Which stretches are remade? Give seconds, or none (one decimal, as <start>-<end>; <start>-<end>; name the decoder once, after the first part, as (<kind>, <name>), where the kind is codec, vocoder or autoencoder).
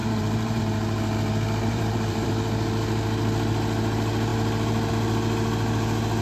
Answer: 0.0-0.6 (vocoder, BigVGAN v2); 1.7-2.3